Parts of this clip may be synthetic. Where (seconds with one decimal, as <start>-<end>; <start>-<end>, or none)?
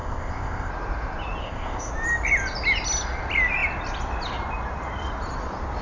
0.0-0.7; 1.4-1.9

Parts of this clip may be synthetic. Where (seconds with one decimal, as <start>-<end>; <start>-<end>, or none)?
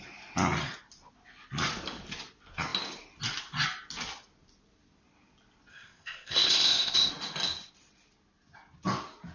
5.7-7.1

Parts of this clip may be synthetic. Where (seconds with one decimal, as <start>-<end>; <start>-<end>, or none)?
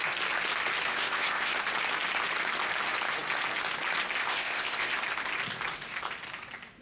0.9-1.5; 4.3-4.9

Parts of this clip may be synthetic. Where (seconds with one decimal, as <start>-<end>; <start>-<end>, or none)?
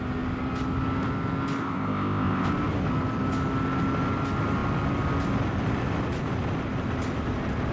1.6-2.5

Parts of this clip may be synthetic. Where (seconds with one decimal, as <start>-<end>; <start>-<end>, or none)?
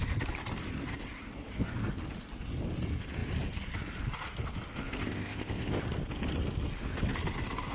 5.0-5.8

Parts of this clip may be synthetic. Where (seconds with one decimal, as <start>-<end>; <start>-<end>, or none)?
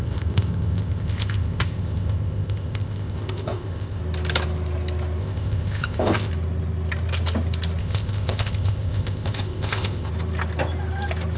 0.0-4.0; 5.2-6.3; 7.8-10.1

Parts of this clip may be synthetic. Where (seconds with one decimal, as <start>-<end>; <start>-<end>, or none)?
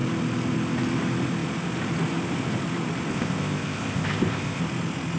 3.1-4.6